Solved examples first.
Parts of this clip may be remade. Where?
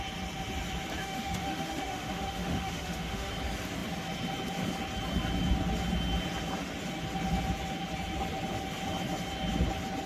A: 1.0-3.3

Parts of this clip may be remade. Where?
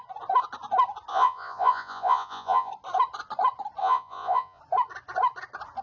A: 1.1-2.7; 3.8-4.6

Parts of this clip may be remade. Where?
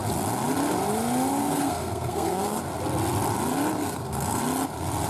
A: 1.4-2.6; 3.8-4.4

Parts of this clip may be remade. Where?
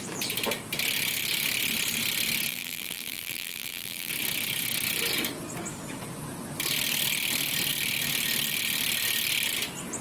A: 2.5-4.1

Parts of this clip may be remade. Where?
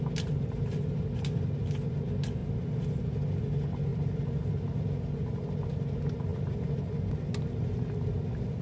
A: none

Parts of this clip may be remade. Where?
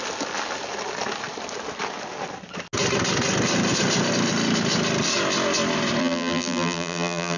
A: 6.0-7.4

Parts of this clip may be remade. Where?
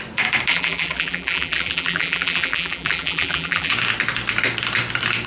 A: 0.5-3.7